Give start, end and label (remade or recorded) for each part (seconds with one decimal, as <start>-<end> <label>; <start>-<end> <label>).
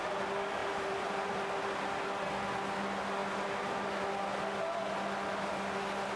0.0-0.6 recorded; 0.6-1.3 remade; 1.3-6.2 recorded